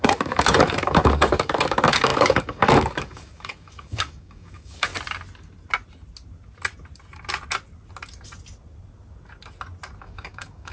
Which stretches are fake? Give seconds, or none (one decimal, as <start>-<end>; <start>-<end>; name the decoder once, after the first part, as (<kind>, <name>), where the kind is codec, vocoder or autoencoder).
0.0-4.9 (codec, DAC); 10.0-10.7